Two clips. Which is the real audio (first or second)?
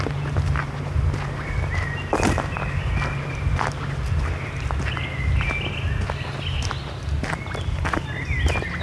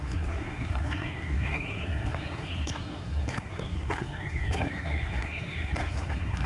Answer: first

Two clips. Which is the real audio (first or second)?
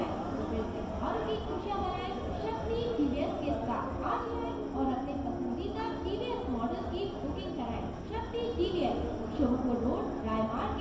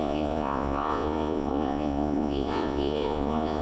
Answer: first